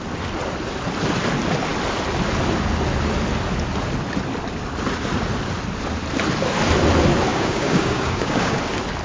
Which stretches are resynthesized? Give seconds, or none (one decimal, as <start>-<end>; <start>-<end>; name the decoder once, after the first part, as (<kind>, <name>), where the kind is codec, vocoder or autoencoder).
7.3-8.6 (codec, DAC)